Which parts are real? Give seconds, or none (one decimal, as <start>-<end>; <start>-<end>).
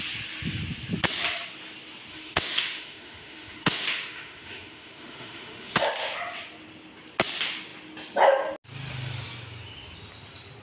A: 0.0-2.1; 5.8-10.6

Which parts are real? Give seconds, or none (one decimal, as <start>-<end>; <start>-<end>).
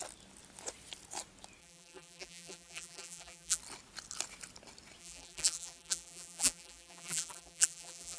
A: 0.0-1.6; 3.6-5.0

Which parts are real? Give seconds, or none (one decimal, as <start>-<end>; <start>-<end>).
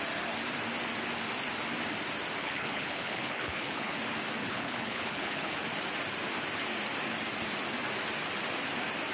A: 0.0-2.4; 3.9-4.4; 5.5-9.1